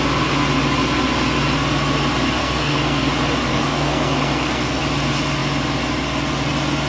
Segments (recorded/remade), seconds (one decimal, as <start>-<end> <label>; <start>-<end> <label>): 0.0-2.4 recorded; 2.4-3.1 remade; 3.1-3.5 recorded; 3.5-4.8 remade; 4.8-6.9 recorded

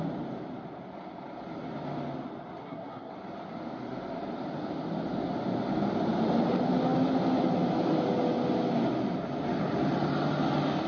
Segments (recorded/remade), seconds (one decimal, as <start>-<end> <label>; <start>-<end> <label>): 0.0-2.6 recorded; 2.6-3.1 remade; 3.1-10.9 recorded

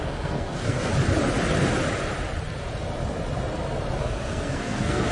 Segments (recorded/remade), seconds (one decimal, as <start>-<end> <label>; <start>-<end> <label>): 0.0-0.9 remade; 0.9-4.0 recorded; 4.0-5.1 remade

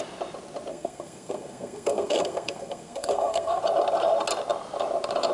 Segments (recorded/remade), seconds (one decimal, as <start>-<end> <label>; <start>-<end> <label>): 0.0-0.7 recorded; 0.7-3.6 remade; 3.6-5.3 recorded

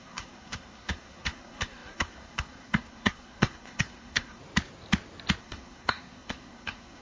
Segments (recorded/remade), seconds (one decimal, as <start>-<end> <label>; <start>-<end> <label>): 0.0-4.4 remade; 4.4-5.4 recorded; 5.4-7.0 remade